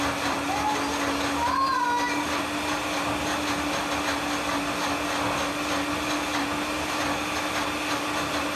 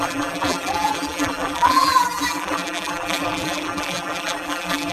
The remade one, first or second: second